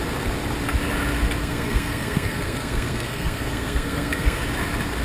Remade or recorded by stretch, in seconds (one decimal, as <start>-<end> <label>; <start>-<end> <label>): 0.0-1.4 recorded; 1.4-4.4 remade; 4.4-5.0 recorded